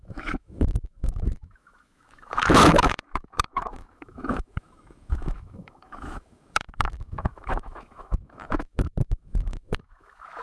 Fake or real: fake